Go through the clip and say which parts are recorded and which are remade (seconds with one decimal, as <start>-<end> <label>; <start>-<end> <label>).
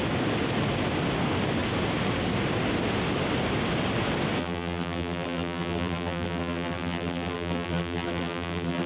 0.0-4.4 recorded; 4.4-8.9 remade